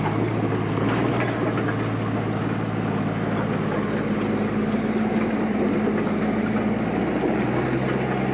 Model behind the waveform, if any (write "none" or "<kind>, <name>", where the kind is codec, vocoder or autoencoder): none